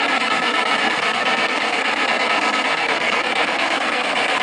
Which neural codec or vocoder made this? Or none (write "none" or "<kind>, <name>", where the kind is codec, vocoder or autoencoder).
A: codec, SNAC